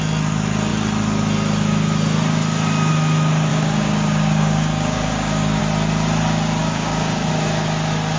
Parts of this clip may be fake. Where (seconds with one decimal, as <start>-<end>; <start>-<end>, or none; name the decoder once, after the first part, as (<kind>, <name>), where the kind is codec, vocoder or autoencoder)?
3.5-5.6 (codec, DAC); 6.6-7.3